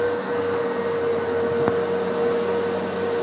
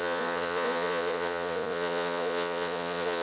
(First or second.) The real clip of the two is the first